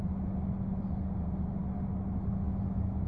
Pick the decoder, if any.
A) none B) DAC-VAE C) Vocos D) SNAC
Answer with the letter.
A